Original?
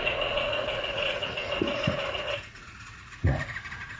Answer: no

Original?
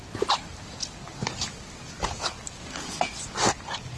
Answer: yes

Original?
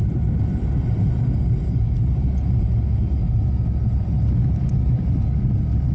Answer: yes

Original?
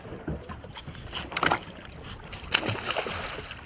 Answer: yes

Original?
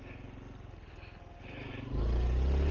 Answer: yes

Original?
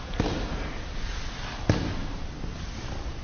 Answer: yes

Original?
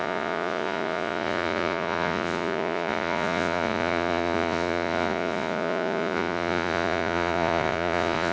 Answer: no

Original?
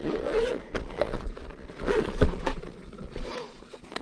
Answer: no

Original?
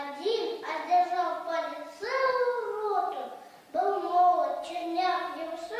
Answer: yes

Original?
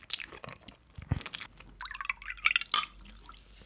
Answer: yes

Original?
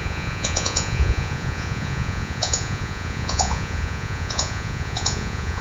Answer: no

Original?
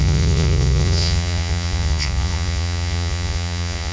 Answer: no